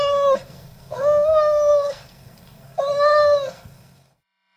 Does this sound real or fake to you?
fake